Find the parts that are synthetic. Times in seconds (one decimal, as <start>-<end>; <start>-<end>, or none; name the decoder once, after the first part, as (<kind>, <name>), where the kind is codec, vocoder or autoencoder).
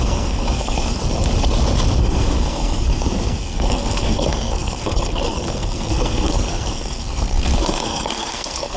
0.0-1.0 (codec, SNAC); 2.0-8.8